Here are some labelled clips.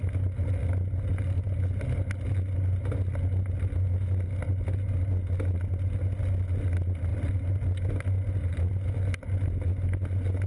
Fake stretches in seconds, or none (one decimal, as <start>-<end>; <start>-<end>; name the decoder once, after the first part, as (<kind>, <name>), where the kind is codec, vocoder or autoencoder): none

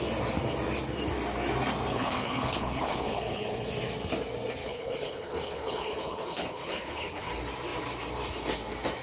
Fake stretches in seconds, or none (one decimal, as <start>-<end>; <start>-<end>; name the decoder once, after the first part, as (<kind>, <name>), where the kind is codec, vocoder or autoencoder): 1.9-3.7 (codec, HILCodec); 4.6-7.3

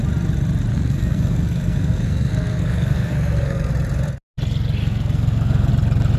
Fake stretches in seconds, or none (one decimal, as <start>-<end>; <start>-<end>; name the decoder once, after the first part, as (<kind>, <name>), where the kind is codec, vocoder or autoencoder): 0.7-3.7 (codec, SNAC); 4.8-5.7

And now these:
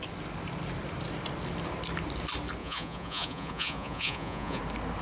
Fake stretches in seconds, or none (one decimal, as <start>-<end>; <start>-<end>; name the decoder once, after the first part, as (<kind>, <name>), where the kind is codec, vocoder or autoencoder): 2.6-4.6 (vocoder, Vocos)

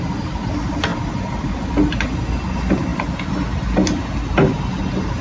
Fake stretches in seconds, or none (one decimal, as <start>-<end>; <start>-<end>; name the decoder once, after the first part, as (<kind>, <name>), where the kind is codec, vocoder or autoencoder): none

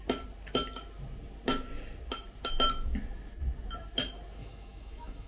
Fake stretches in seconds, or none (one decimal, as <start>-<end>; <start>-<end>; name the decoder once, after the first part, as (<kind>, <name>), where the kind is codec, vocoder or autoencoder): 4.4-5.3 (autoencoder, DAC-VAE)

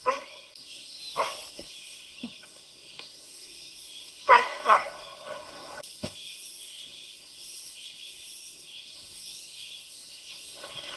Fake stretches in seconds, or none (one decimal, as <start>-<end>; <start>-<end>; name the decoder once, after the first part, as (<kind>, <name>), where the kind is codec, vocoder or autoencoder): 0.0-1.0 (codec, SNAC); 1.5-11.0